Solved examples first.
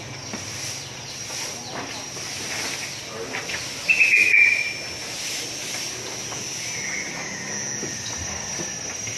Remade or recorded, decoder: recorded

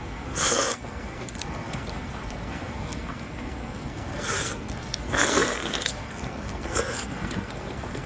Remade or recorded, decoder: remade, codec, SNAC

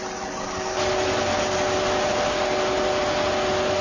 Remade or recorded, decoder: recorded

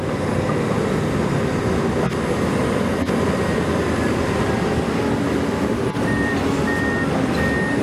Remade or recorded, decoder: recorded